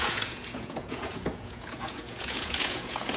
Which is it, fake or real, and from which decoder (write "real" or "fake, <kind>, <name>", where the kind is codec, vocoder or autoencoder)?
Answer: fake, vocoder, Vocos